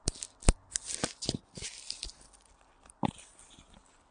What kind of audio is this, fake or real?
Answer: real